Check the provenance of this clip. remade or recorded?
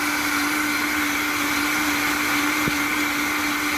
recorded